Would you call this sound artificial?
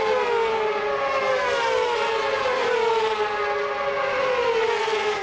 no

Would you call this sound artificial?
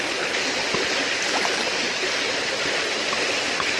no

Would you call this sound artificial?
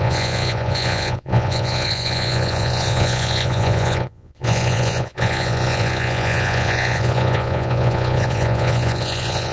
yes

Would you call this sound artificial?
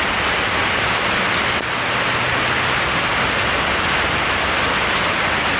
no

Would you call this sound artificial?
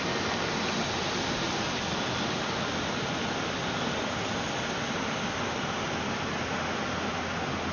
no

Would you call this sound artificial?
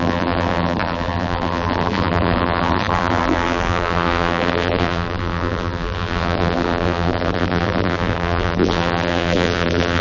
yes